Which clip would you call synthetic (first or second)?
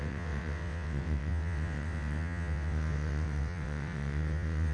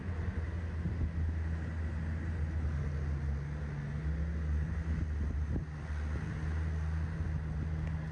first